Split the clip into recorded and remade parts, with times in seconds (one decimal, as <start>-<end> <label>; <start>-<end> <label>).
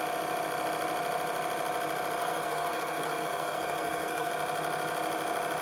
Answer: 0.0-2.2 recorded; 2.2-4.3 remade; 4.3-5.6 recorded